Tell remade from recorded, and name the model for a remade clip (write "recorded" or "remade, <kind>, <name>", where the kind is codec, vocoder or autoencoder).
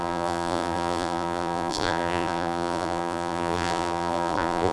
remade, vocoder, BigVGAN v2